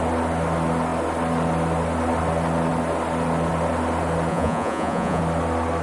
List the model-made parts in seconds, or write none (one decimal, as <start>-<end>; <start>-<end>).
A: 4.3-5.2